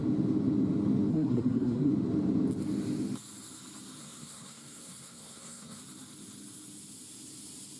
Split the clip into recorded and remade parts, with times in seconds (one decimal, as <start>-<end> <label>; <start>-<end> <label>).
0.0-1.1 recorded; 1.1-1.9 remade; 1.9-4.0 recorded; 4.0-5.8 remade; 5.8-7.8 recorded